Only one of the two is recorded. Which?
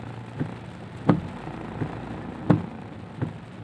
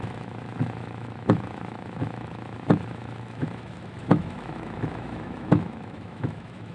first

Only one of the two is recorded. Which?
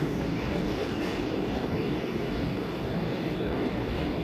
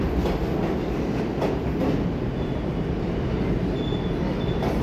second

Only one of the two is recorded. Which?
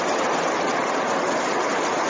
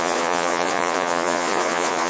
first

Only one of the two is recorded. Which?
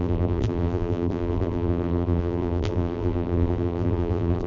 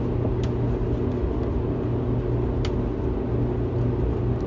second